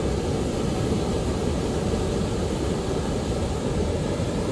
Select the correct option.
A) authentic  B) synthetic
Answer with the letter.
A